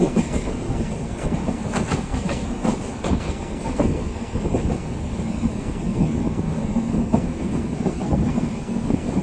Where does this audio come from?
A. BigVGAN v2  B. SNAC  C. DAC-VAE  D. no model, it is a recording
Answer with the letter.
B